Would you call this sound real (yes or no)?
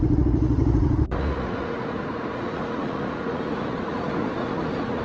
no